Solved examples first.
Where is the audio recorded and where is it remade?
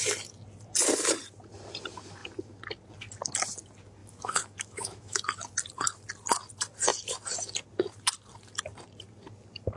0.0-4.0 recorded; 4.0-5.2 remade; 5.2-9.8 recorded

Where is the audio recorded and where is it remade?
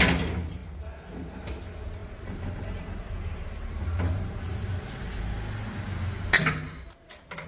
0.0-2.0 recorded; 2.0-5.2 remade; 5.2-7.5 recorded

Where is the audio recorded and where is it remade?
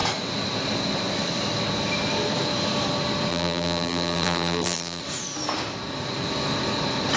0.0-3.3 recorded; 3.3-5.0 remade; 5.0-7.2 recorded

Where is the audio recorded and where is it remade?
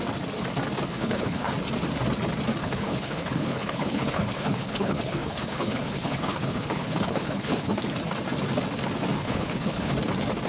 0.0-0.9 recorded; 0.9-1.5 remade; 1.5-2.6 recorded; 2.6-7.8 remade; 7.8-9.2 recorded; 9.2-9.9 remade; 9.9-10.5 recorded